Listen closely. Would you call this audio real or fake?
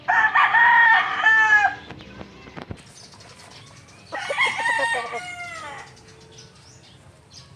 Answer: real